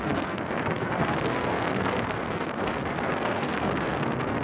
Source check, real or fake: fake